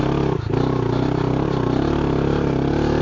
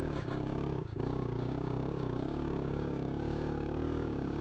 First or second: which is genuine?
first